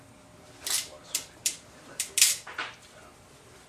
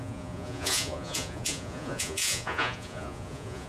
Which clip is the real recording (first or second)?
first